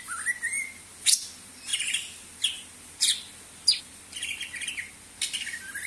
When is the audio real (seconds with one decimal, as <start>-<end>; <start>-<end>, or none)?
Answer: 0.0-5.9